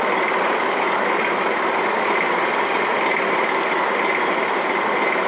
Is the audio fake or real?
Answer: real